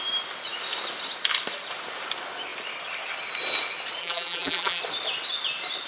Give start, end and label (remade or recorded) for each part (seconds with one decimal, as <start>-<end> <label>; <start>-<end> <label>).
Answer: 0.0-4.0 recorded; 4.0-4.8 remade; 4.8-5.9 recorded